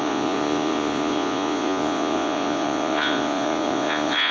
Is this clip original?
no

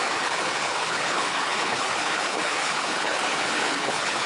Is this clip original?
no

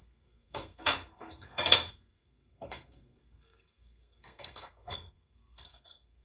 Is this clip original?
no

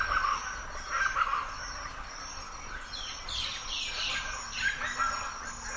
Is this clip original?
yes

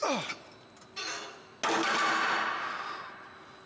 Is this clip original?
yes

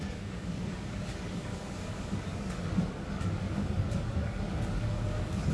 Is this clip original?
no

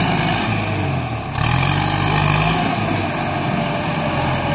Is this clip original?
yes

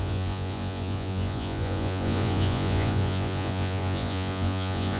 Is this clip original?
no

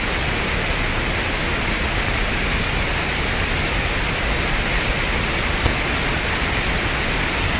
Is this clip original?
yes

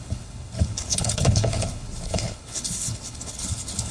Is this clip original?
no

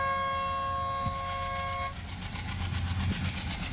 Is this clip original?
yes